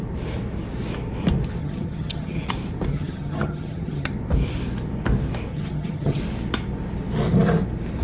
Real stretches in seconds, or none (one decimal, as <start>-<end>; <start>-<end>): 0.0-1.6; 2.5-2.9; 4.1-5.5; 6.2-8.0